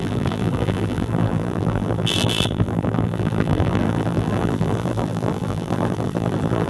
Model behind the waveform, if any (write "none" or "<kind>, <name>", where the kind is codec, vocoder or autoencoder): vocoder, BigVGAN v2